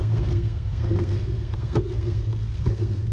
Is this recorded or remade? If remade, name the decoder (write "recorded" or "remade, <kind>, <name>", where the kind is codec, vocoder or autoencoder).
remade, codec, SNAC